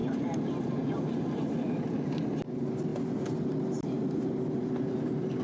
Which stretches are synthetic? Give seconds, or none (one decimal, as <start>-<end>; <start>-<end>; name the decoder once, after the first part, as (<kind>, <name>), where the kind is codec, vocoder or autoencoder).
none